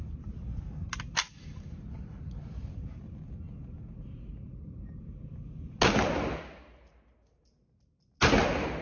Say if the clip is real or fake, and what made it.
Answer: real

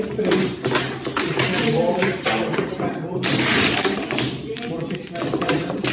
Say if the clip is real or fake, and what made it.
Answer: fake, vocoder, BigVGAN v2